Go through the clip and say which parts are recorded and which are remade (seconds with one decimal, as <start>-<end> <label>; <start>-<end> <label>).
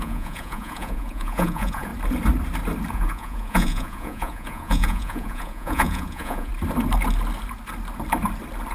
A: 0.0-1.9 remade; 1.9-2.9 recorded; 2.9-6.5 remade; 6.5-8.7 recorded